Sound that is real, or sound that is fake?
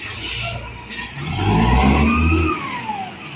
real